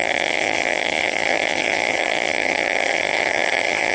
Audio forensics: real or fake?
fake